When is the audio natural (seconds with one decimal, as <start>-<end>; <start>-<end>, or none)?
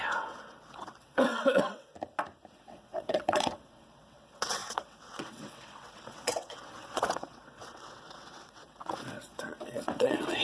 1.9-2.6